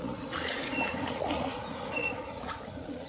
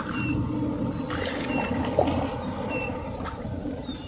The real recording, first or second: second